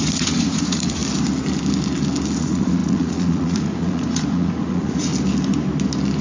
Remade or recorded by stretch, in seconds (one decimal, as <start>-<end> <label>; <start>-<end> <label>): 0.0-1.0 remade; 1.0-2.4 recorded; 2.4-5.1 remade; 5.1-6.2 recorded